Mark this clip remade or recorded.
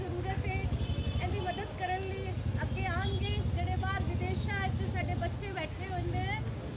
recorded